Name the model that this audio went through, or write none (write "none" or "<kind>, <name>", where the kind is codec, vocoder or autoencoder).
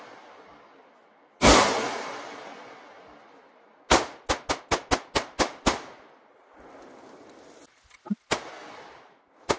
none